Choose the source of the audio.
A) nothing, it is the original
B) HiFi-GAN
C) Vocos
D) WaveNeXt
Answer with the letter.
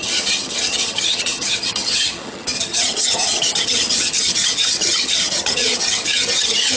B